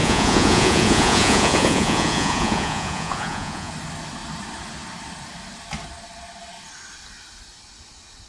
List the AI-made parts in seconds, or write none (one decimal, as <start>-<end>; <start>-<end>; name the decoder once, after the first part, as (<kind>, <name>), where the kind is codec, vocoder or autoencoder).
0.0-3.7 (vocoder, Vocos)